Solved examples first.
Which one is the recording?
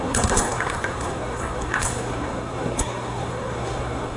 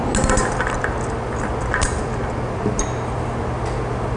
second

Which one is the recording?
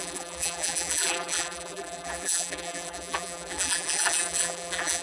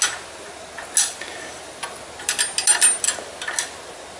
second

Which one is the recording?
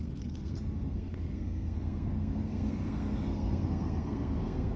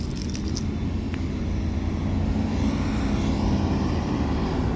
second